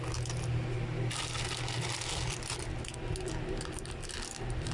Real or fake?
real